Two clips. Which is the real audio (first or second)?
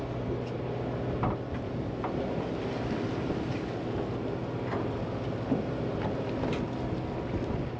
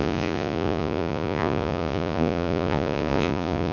first